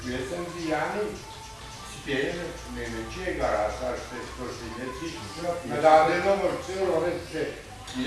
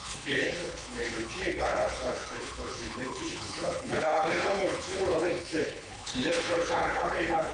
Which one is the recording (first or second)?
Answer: first